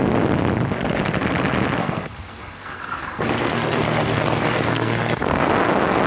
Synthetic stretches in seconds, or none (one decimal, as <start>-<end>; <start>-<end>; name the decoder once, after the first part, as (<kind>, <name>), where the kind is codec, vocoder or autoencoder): 1.8-5.5 (codec, SNAC)